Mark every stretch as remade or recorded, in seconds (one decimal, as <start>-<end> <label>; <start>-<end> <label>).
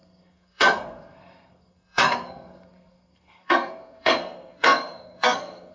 0.0-5.7 remade